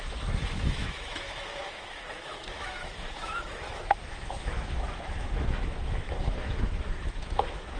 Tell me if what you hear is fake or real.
fake